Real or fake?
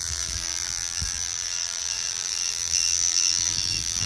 fake